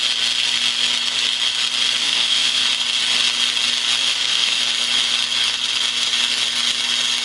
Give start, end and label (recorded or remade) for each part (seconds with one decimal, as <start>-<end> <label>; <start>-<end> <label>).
0.0-2.0 recorded; 2.0-2.6 remade; 2.6-4.0 recorded; 4.0-4.6 remade; 4.6-7.2 recorded